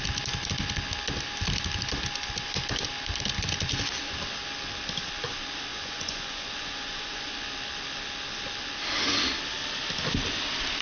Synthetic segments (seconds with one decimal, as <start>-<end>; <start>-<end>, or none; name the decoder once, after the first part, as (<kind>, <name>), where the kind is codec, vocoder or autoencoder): 5.7-7.3 (vocoder, Vocos)